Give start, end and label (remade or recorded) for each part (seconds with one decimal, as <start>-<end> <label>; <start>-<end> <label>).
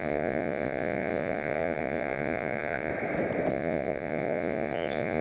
0.0-2.9 remade; 2.9-3.5 recorded; 3.5-5.2 remade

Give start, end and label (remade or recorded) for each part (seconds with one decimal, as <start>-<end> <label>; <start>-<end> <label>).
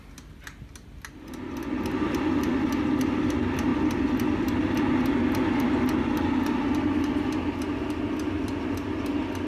0.0-9.5 recorded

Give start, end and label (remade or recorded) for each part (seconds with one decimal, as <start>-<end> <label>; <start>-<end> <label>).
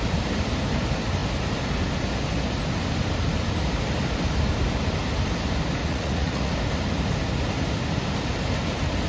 0.0-5.8 recorded; 5.8-6.5 remade; 6.5-9.1 recorded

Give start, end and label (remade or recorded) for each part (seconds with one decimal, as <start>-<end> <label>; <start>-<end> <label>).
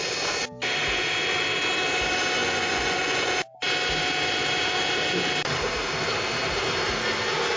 0.0-2.4 recorded; 2.4-3.3 remade; 3.3-7.6 recorded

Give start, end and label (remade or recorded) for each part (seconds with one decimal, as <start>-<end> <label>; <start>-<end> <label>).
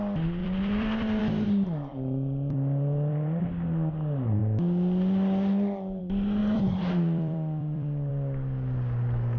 0.0-0.4 recorded; 0.4-1.2 remade; 1.2-1.9 recorded; 1.9-3.4 remade; 3.4-6.4 recorded; 6.4-8.1 remade; 8.1-9.4 recorded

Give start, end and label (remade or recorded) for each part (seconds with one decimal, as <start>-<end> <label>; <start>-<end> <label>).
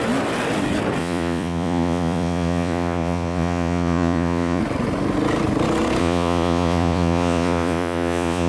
0.0-1.0 recorded; 1.0-4.6 remade; 4.6-6.0 recorded; 6.0-8.5 remade